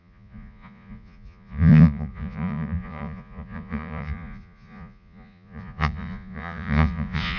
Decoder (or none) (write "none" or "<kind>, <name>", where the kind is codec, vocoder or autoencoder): vocoder, Vocos